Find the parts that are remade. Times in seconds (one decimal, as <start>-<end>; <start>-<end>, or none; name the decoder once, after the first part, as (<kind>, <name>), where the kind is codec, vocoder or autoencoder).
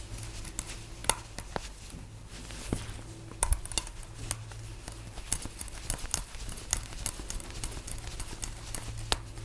none